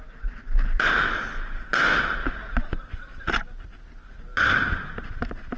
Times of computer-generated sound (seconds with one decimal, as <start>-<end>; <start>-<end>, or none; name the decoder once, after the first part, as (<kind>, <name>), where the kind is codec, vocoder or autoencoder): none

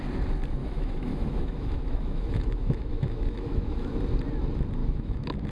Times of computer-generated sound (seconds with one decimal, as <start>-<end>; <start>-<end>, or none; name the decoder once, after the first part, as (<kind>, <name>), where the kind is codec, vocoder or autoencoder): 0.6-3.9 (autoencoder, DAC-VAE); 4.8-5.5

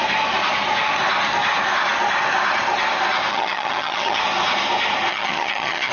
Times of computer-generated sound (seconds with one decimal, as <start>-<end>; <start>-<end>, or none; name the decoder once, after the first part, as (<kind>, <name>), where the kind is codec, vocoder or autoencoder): 3.3-4.2 (vocoder, HiFi-GAN); 5.1-5.9

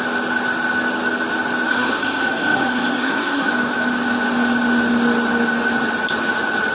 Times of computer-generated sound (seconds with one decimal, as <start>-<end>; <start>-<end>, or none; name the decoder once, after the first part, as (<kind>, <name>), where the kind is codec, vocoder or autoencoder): 1.7-3.5 (codec, SNAC)

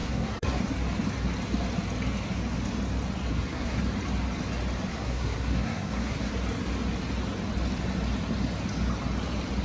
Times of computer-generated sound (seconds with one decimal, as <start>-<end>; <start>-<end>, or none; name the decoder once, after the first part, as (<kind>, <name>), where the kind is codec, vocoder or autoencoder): 0.0-0.6 (codec, SNAC); 3.3-3.8; 4.9-6.3